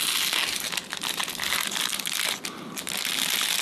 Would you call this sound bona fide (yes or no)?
yes